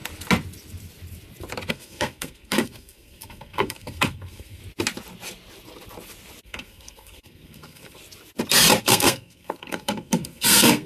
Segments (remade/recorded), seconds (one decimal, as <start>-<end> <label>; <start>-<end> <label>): 0.0-1.7 recorded; 1.7-4.6 remade; 4.6-6.4 recorded; 6.4-8.0 remade; 8.0-8.8 recorded; 8.8-10.9 remade